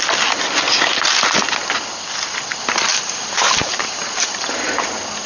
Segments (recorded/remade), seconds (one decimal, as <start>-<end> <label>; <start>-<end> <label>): 0.0-2.9 recorded; 2.9-4.3 remade; 4.3-5.3 recorded